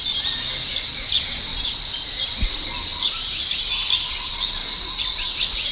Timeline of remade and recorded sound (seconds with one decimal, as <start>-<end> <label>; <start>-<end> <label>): 0.0-5.7 recorded